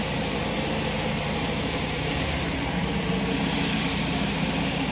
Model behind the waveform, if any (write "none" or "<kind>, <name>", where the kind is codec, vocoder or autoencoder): vocoder, BigVGAN v2